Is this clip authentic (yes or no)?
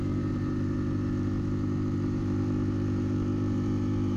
no